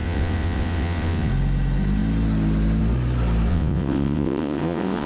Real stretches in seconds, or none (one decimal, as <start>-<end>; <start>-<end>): 1.3-3.5

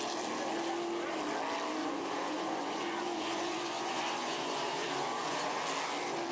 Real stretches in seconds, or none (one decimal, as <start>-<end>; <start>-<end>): 0.0-1.8; 5.6-6.3

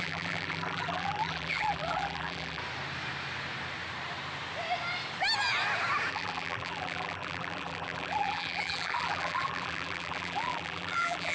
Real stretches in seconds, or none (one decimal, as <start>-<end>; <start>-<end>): 2.6-6.1

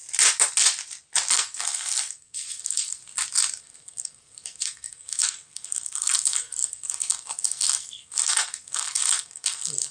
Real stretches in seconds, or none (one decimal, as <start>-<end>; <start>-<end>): 0.0-1.3; 3.0-3.6